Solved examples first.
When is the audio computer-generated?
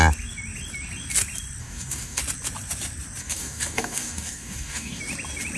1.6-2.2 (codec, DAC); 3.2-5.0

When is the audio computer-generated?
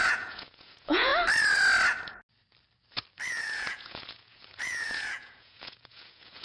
0.0-1.1 (vocoder, Vocos); 3.3-6.4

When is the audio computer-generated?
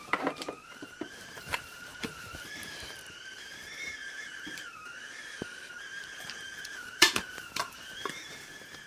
0.0-8.9 (vocoder, BigVGAN v2)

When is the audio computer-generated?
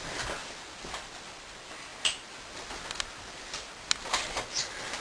none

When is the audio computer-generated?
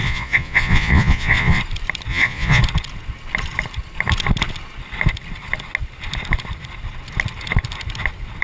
0.0-1.6 (vocoder, Vocos); 2.1-2.6